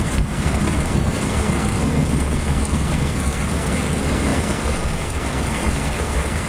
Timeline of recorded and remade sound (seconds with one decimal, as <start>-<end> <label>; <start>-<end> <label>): 0.0-6.5 remade